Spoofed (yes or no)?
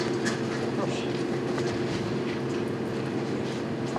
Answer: no